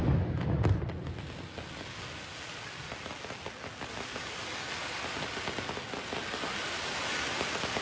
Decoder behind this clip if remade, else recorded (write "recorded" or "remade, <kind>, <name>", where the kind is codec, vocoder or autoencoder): recorded